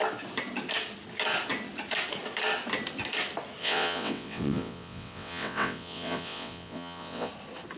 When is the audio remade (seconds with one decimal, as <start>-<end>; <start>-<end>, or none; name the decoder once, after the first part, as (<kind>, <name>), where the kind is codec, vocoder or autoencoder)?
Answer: 3.6-7.3 (vocoder, WaveNeXt)